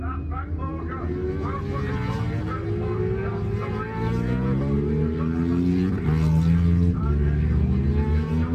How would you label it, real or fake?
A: real